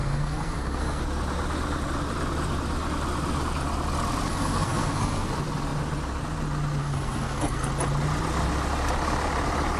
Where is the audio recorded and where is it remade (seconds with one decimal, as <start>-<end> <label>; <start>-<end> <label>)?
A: 0.0-1.0 remade; 1.0-4.3 recorded; 4.3-5.3 remade; 5.3-6.8 recorded; 6.8-7.7 remade; 7.7-9.8 recorded